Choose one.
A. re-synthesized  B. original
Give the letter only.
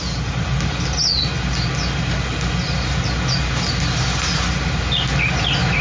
B